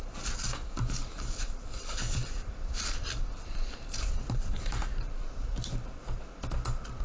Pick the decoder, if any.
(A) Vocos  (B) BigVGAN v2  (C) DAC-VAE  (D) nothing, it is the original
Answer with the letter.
B